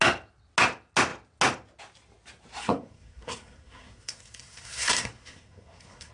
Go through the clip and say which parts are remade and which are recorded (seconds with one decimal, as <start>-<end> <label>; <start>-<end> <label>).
0.0-2.6 recorded; 2.6-6.1 remade